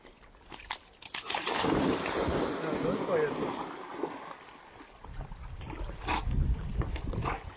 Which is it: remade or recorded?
recorded